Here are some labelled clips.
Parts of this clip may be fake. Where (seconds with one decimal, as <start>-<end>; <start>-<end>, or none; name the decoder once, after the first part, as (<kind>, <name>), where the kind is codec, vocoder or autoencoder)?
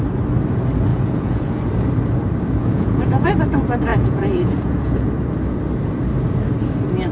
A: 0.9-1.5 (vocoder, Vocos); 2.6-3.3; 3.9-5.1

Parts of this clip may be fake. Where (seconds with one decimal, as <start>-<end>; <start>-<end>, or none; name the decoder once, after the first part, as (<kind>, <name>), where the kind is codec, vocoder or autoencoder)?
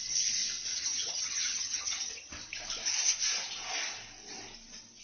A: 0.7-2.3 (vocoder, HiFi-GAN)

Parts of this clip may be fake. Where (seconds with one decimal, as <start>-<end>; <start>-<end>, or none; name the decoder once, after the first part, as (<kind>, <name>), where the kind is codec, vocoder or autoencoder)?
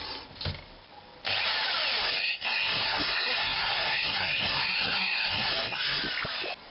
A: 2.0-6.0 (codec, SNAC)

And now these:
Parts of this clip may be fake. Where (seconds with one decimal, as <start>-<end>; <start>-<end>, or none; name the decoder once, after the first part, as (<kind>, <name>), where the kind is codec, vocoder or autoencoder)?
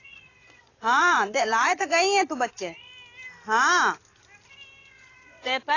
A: 0.0-1.9 (vocoder, Vocos); 2.5-2.9; 4.8-5.8